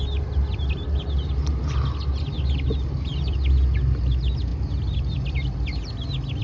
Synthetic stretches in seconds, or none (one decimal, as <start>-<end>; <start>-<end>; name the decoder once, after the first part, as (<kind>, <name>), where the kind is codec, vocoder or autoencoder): none